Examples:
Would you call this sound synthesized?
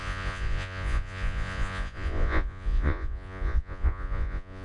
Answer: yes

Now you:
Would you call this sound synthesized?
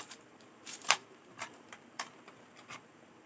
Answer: yes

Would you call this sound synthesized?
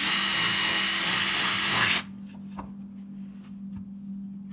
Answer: no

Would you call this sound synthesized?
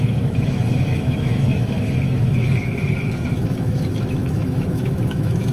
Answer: yes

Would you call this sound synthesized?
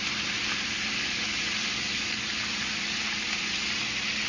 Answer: no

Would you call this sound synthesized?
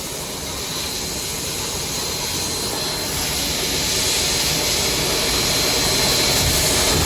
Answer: no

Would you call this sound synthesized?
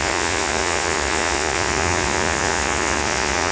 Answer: yes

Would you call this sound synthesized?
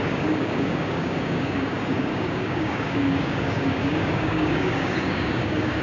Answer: yes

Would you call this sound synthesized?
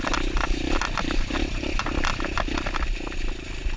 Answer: no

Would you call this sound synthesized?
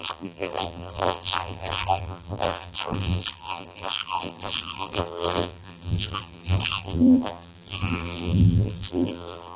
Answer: yes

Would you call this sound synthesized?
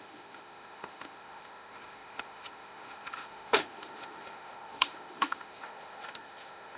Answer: yes